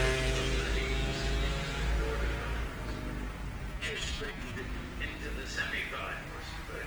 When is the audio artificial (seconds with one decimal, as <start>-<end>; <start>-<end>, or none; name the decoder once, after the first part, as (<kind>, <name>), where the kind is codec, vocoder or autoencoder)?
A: 3.7-4.6 (vocoder, Vocos)